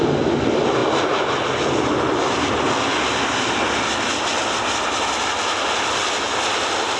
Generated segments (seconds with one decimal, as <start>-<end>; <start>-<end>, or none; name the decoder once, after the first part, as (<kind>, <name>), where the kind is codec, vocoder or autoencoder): none